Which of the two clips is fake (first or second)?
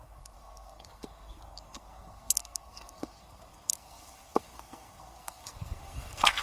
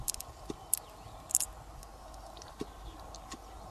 first